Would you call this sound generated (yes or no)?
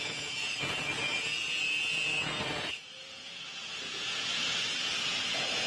yes